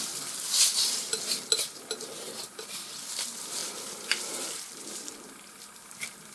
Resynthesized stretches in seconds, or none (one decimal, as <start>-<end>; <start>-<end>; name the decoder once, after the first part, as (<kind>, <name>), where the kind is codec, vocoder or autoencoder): 0.0-6.3 (vocoder, BigVGAN v2)